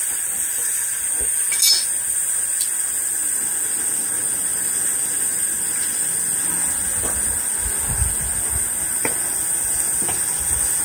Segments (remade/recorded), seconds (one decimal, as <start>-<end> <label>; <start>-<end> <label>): 0.0-10.8 recorded